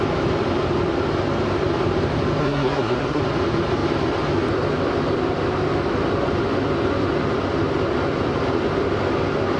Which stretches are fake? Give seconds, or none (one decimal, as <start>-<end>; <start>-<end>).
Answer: 2.4-3.2